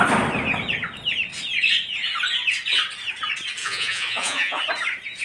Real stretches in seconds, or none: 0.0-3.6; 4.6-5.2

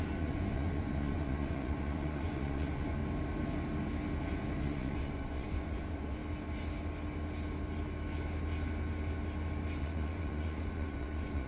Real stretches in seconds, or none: 3.0-4.6; 6.2-9.8

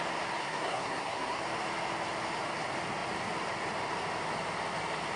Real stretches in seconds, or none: 0.0-0.4; 1.4-5.2

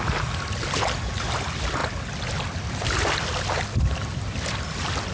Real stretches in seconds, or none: 0.0-5.1

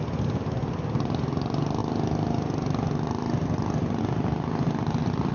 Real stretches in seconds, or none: 0.0-5.3